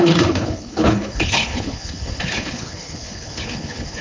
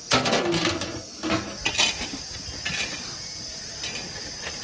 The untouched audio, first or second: second